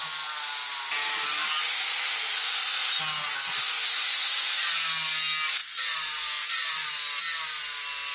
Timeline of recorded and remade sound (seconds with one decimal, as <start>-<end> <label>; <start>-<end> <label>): 0.0-3.3 recorded; 3.3-4.8 remade; 4.8-5.6 recorded; 5.6-6.9 remade; 6.9-8.1 recorded